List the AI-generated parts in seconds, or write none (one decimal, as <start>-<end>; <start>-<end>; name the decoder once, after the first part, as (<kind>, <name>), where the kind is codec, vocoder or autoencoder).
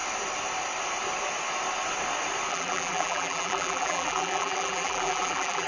2.5-5.7 (vocoder, BigVGAN v2)